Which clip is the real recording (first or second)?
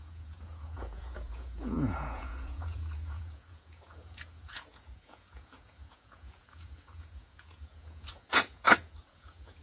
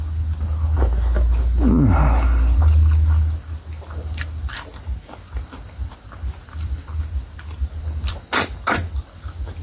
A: second